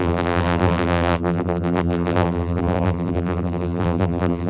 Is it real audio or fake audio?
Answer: fake